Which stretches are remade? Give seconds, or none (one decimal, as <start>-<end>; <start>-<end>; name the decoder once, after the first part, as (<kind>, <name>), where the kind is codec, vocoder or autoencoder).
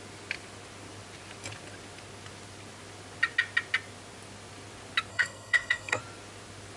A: 5.1-6.0 (codec, SNAC)